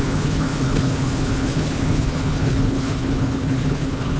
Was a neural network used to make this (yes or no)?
yes